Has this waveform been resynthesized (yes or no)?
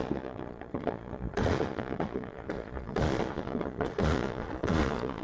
yes